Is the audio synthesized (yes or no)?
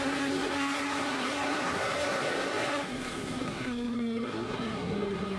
yes